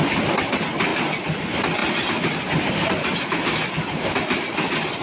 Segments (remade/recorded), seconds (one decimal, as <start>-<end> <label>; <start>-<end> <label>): 0.0-5.0 recorded